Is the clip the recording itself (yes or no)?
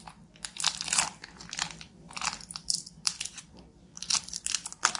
no